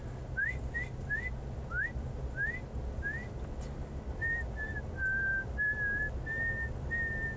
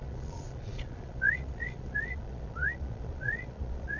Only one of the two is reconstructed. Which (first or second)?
second